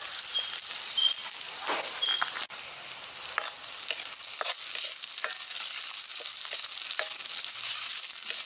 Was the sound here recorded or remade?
recorded